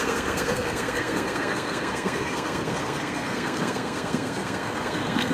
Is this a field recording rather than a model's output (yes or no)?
no